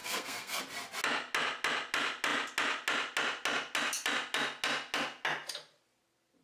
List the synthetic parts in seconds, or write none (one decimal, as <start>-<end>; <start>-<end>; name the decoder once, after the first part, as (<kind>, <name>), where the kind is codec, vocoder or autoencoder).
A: 0.0-0.6 (codec, SNAC)